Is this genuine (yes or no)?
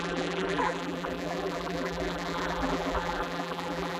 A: no